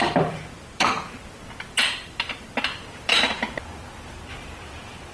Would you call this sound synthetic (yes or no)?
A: yes